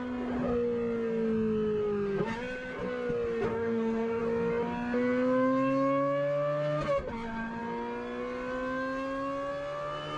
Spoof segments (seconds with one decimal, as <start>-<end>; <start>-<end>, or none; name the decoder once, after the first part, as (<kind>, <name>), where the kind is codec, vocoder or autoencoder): 3.5-4.2 (codec, DAC)